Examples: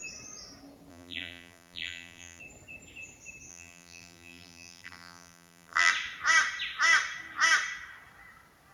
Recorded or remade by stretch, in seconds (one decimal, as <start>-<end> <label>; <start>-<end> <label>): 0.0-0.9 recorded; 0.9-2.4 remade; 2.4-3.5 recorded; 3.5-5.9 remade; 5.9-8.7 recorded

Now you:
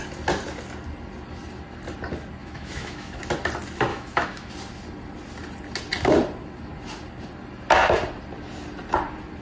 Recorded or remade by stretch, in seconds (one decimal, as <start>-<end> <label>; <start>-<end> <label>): 0.0-2.4 recorded; 2.4-3.2 remade; 3.2-3.9 recorded; 3.9-4.5 remade; 4.5-9.4 recorded

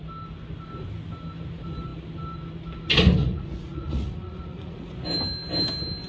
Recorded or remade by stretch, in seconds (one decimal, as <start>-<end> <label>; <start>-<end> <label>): 0.0-3.2 recorded; 3.2-4.9 remade; 4.9-6.1 recorded

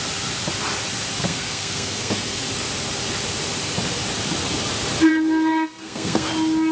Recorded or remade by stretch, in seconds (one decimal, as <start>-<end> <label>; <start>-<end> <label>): 0.0-1.2 recorded; 1.2-2.4 remade; 2.4-5.1 recorded; 5.1-6.3 remade; 6.3-6.7 recorded

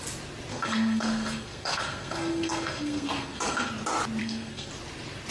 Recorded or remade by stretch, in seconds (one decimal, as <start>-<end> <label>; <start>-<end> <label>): 0.0-0.5 recorded; 0.5-3.7 remade; 3.7-4.2 recorded; 4.2-4.7 remade; 4.7-5.3 recorded